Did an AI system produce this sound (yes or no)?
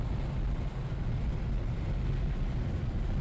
no